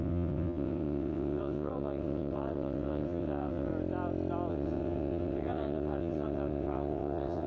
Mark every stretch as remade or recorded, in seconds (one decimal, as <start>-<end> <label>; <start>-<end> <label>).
0.0-3.7 remade; 3.7-4.5 recorded; 4.5-7.5 remade